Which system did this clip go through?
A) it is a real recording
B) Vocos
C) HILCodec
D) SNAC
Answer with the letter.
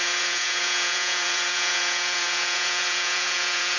B